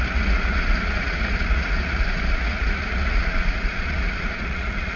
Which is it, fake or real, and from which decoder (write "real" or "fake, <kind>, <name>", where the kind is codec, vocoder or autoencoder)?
fake, vocoder, Vocos